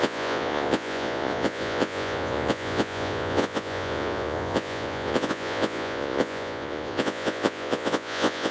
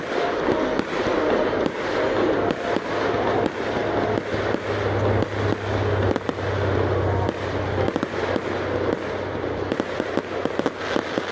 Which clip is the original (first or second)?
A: second